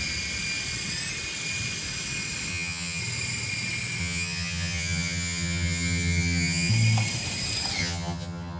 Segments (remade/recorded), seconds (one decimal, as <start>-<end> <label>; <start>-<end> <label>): 0.0-2.5 recorded; 2.5-3.0 remade; 3.0-4.0 recorded; 4.0-6.7 remade; 6.7-7.8 recorded; 7.8-8.6 remade

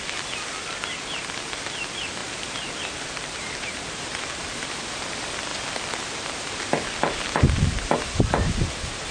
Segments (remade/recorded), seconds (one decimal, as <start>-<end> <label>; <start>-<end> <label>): 0.0-2.2 recorded; 2.2-5.0 remade; 5.0-9.1 recorded